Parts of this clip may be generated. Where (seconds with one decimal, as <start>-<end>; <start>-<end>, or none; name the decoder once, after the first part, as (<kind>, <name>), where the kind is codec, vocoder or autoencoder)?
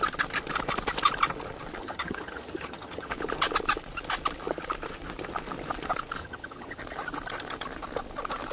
1.8-3.1 (vocoder, HiFi-GAN); 6.2-6.8